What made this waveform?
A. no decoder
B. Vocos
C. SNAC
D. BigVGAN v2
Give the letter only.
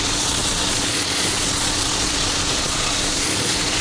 B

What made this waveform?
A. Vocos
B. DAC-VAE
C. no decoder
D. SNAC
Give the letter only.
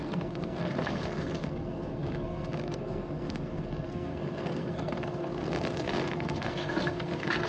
D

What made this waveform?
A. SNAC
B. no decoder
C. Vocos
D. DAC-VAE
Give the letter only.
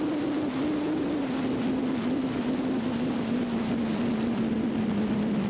B